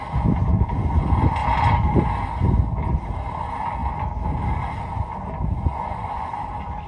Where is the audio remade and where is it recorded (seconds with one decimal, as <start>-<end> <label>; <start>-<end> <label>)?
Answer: 0.0-5.7 recorded; 5.7-6.3 remade; 6.3-6.9 recorded